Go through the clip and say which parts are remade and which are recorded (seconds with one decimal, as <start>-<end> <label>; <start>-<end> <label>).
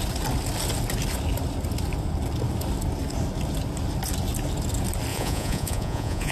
0.0-5.1 recorded; 5.1-6.3 remade